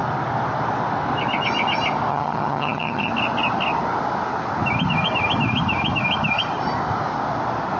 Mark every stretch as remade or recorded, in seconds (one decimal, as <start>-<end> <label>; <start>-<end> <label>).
0.0-2.1 recorded; 2.1-3.1 remade; 3.1-7.8 recorded